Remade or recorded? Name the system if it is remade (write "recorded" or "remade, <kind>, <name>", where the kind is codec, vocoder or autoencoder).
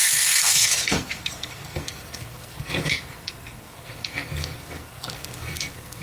remade, codec, SNAC